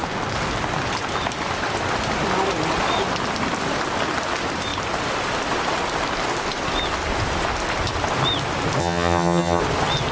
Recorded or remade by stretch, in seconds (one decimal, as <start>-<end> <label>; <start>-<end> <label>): 0.0-8.8 recorded; 8.8-9.6 remade; 9.6-10.1 recorded